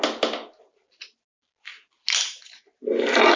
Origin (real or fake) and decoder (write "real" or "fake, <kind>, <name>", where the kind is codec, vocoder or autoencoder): real